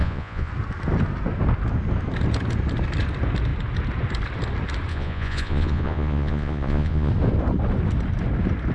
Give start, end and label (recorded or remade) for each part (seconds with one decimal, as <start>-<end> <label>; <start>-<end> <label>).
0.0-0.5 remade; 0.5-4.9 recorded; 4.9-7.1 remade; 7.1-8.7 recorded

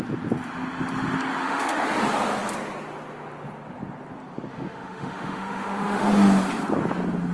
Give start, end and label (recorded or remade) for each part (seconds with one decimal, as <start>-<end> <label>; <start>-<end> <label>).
0.0-1.4 recorded; 1.4-1.9 remade; 1.9-4.5 recorded; 4.5-6.1 remade; 6.1-7.3 recorded

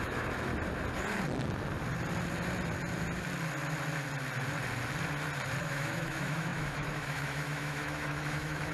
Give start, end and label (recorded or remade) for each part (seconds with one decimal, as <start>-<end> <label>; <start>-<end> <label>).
0.0-0.5 remade; 0.5-5.6 recorded; 5.6-8.7 remade

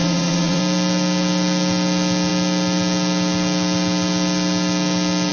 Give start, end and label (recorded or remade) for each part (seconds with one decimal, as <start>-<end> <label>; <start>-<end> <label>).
0.0-0.6 remade; 0.6-5.3 recorded

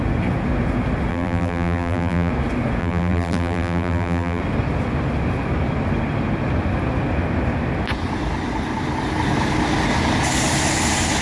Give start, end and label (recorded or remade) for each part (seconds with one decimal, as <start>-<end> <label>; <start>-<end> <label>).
0.0-1.1 recorded; 1.1-2.3 remade; 2.3-2.8 recorded; 2.8-4.4 remade; 4.4-11.2 recorded

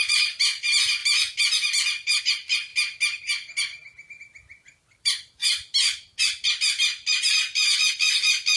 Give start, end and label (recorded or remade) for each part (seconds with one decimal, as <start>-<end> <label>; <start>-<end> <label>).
0.0-1.0 remade; 1.0-2.2 recorded; 2.2-2.7 remade; 2.7-4.2 recorded; 4.2-5.4 remade; 5.4-7.9 recorded; 7.9-8.6 remade